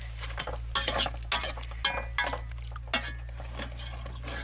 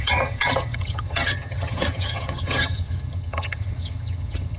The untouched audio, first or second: first